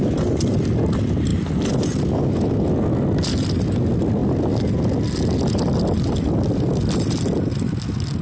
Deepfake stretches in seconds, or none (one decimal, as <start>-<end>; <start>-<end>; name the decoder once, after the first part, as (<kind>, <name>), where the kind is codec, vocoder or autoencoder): none